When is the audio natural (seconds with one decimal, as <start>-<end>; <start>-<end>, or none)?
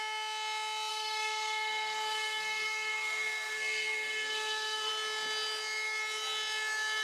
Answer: 0.0-0.9; 4.9-7.0